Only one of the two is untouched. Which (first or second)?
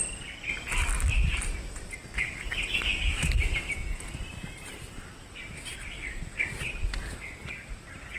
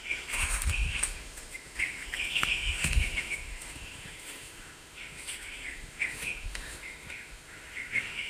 first